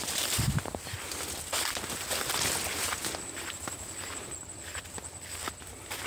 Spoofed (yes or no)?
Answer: no